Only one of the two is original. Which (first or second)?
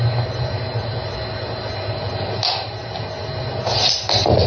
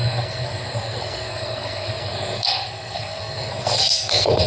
first